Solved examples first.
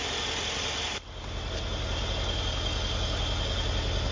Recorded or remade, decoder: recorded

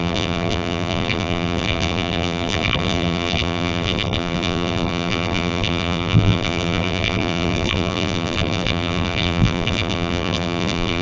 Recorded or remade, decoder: remade, vocoder, BigVGAN v2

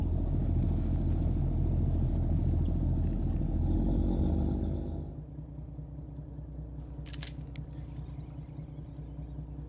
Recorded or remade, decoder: recorded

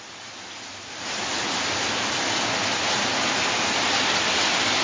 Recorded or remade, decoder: remade, vocoder, BigVGAN v2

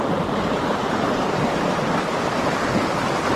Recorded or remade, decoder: recorded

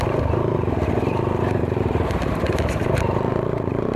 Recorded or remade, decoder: remade, vocoder, BigVGAN v2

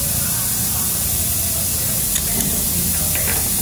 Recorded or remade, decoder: recorded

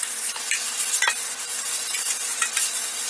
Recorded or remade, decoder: remade, vocoder, BigVGAN v2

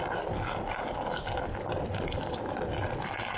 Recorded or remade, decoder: recorded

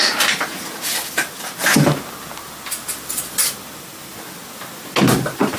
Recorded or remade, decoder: recorded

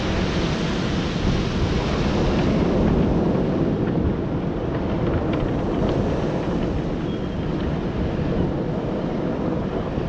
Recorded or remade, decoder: recorded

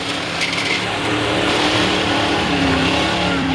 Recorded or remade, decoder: remade, vocoder, BigVGAN v2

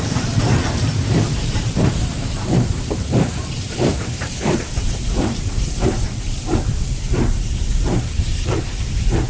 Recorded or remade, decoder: remade, vocoder, BigVGAN v2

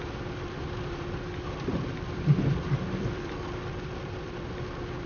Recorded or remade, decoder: remade, vocoder, BigVGAN v2